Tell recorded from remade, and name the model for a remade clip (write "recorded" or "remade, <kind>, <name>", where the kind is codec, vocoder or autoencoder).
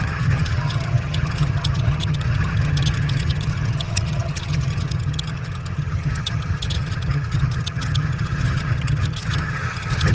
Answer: remade, vocoder, HiFi-GAN